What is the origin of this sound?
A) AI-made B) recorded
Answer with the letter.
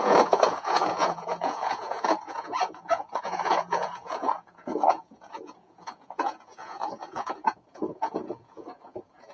A